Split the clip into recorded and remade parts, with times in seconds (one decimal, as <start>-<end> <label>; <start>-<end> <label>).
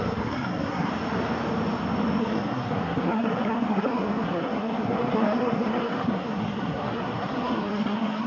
0.0-0.9 remade; 0.9-2.2 recorded; 2.2-8.3 remade